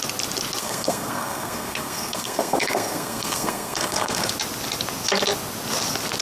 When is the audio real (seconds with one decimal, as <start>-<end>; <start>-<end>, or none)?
0.0-0.6; 4.3-6.2